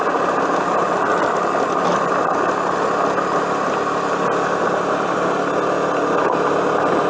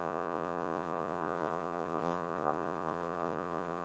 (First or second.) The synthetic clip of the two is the second